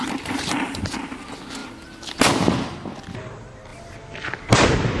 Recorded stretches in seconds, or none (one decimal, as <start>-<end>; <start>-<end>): 0.0-5.0